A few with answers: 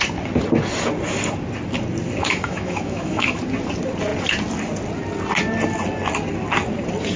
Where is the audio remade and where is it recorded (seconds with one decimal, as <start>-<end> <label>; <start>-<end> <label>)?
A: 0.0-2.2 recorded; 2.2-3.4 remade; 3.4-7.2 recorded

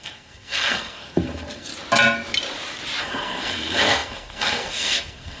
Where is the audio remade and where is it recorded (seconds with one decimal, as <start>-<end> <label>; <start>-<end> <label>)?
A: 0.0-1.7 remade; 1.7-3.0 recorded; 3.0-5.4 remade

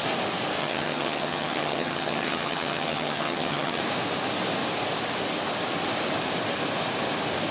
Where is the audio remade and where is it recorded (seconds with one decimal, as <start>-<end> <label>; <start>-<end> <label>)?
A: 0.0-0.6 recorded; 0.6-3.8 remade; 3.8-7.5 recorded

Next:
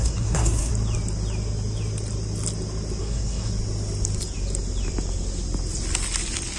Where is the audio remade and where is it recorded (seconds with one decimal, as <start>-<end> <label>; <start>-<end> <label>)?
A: 0.0-0.7 remade; 0.7-3.0 recorded; 3.0-3.5 remade; 3.5-6.6 recorded